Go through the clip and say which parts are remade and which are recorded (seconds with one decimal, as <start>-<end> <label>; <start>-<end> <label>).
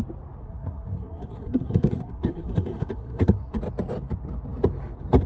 0.0-0.4 recorded; 0.4-3.6 remade; 3.6-5.3 recorded